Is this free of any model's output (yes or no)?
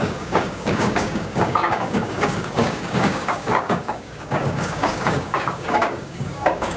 no